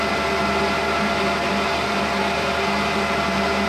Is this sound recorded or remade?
recorded